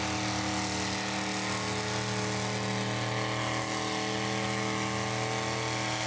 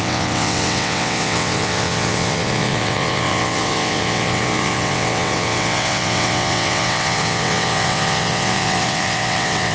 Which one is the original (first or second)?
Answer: first